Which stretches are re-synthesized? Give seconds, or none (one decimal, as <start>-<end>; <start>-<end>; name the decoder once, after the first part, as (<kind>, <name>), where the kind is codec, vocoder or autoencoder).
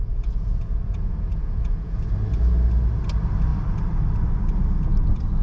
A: 0.0-2.1 (vocoder, Vocos)